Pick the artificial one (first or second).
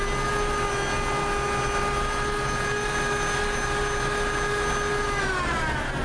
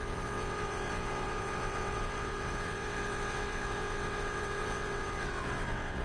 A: second